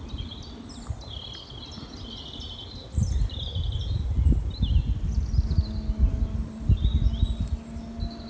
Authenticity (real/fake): real